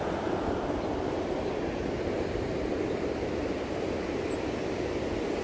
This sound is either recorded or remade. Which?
recorded